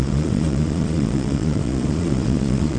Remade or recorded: remade